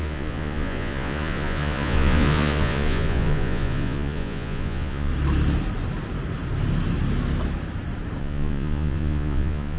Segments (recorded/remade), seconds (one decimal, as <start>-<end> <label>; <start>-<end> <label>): 0.0-5.1 remade; 5.1-8.2 recorded; 8.2-9.8 remade